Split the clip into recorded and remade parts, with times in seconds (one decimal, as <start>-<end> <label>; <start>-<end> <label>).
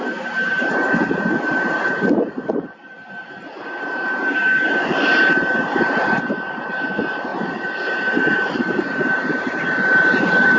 0.0-10.6 recorded